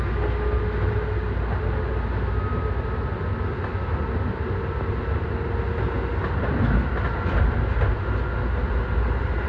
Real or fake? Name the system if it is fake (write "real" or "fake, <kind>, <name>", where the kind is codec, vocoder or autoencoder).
real